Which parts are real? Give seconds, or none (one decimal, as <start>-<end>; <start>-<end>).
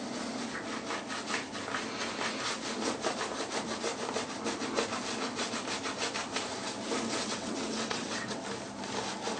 0.0-7.2; 8.4-9.4